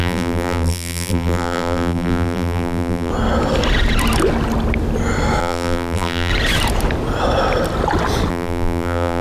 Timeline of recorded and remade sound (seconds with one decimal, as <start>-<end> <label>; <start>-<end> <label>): 0.0-3.1 remade; 3.1-5.4 recorded; 5.4-6.3 remade; 6.3-8.3 recorded; 8.3-9.2 remade